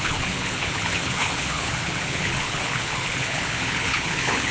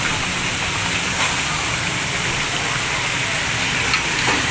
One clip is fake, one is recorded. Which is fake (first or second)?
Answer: first